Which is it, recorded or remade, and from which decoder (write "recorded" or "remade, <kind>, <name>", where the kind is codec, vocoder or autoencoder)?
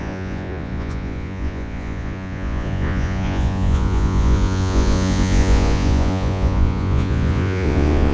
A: remade, vocoder, Vocos